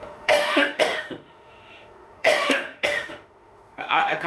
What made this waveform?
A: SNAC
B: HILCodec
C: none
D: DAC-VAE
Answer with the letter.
D